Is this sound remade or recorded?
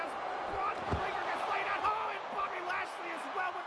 recorded